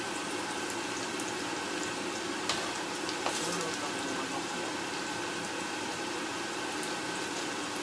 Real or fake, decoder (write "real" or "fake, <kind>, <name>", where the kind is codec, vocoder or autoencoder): real